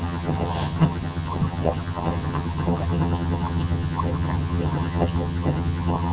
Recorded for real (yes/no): no